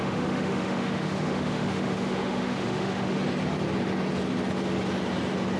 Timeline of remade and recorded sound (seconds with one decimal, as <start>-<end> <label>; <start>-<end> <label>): 0.0-3.2 remade; 3.2-5.6 recorded